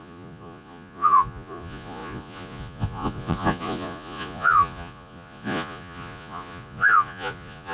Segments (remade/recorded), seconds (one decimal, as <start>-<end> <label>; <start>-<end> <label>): 0.0-7.7 remade